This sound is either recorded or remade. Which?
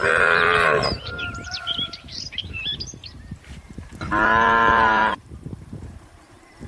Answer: remade